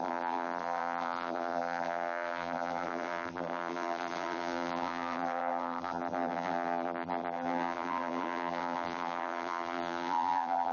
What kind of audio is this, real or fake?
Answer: fake